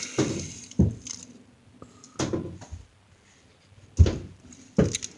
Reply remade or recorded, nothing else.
recorded